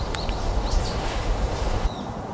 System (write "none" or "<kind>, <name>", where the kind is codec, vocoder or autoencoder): vocoder, Vocos